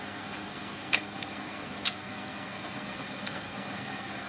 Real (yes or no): no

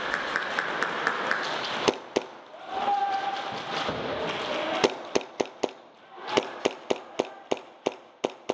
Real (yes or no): yes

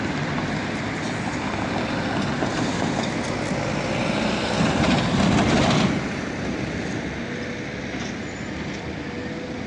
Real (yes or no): yes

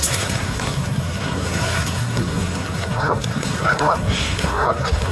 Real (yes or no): no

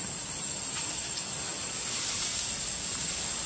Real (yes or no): yes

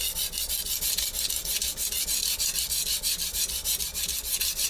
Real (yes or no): yes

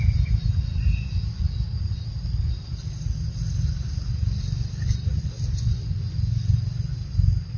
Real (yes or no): yes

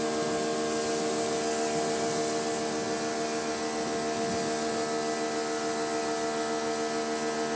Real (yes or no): yes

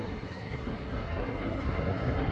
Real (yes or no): no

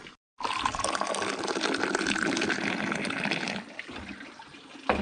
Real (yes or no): yes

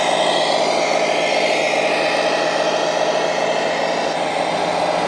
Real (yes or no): yes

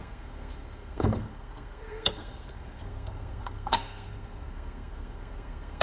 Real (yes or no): no